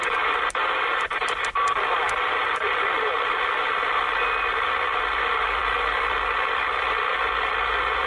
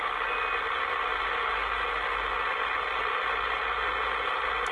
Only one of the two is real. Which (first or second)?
second